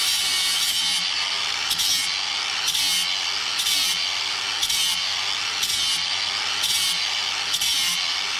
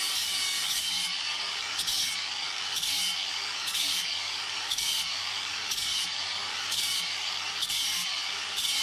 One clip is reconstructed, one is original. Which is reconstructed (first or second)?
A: second